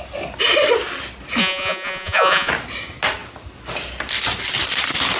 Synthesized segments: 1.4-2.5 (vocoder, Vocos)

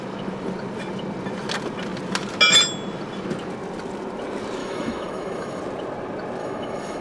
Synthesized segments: 4.6-5.6 (autoencoder, DAC-VAE); 6.4-7.0